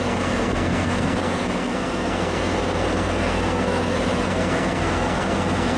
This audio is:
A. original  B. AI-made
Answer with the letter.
B